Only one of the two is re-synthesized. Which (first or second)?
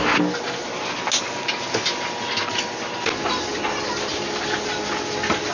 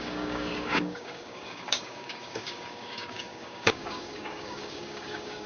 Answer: second